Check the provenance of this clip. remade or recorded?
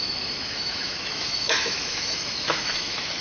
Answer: remade